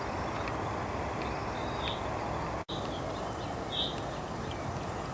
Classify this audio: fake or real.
real